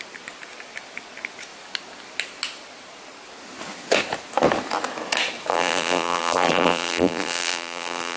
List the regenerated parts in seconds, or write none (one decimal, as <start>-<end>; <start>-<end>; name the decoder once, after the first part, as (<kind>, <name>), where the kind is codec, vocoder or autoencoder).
5.5-8.2 (vocoder, BigVGAN v2)